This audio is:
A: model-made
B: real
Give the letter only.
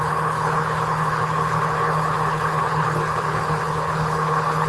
A